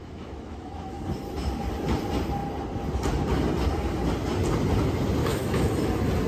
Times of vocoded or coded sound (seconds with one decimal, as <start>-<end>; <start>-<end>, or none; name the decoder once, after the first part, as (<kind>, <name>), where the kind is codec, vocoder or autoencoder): 0.0-1.0 (autoencoder, DAC-VAE); 5.2-5.7